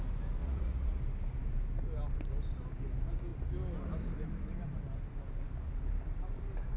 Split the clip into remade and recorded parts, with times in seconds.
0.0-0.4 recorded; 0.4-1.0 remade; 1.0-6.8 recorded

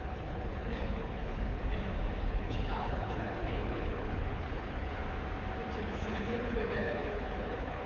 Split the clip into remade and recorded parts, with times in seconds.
0.0-1.6 remade; 1.6-2.2 recorded; 2.2-5.0 remade; 5.0-5.8 recorded; 5.8-7.9 remade

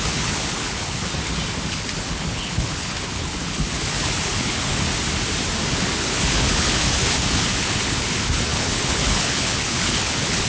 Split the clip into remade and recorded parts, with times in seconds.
0.0-1.1 remade; 1.1-1.7 recorded; 1.7-4.9 remade; 4.9-5.7 recorded; 5.7-10.5 remade

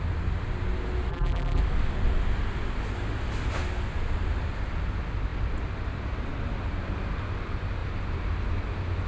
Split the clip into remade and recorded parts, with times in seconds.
0.0-1.1 recorded; 1.1-1.6 remade; 1.6-9.1 recorded